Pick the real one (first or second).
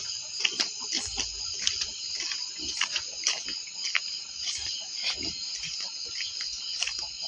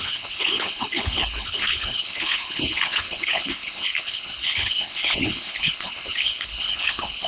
first